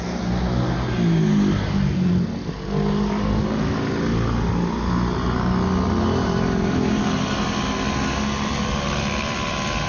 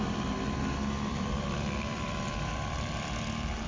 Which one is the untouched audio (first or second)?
first